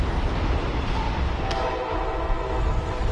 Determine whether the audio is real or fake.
real